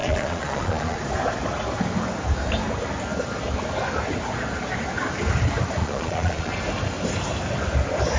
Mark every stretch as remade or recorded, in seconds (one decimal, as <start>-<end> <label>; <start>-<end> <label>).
0.0-1.0 remade; 1.0-5.8 recorded; 5.8-6.5 remade; 6.5-8.2 recorded

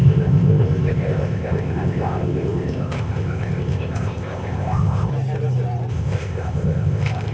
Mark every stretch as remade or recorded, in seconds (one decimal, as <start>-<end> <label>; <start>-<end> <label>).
0.0-5.1 remade; 5.1-5.9 recorded; 5.9-7.3 remade

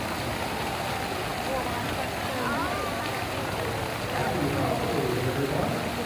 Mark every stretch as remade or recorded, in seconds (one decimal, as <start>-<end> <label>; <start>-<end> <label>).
0.0-6.1 recorded